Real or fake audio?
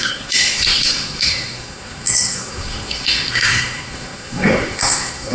fake